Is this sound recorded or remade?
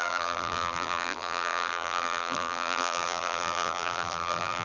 remade